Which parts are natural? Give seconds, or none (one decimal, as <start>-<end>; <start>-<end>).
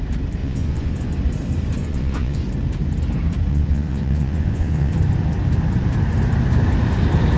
0.0-0.4; 1.1-1.8; 2.4-3.5; 4.9-7.4